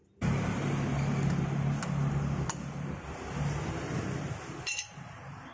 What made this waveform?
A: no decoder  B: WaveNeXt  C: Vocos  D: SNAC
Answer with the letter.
A